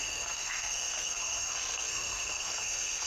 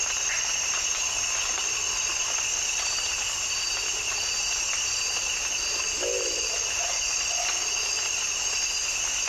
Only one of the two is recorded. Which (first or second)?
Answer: second